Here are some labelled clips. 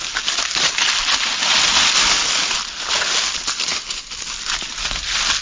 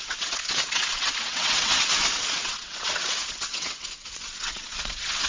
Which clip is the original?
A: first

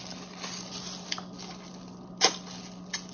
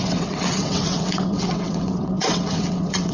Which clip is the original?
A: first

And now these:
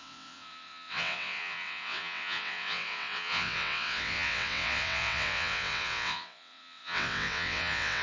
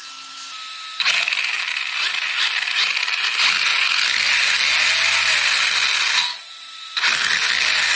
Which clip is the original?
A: second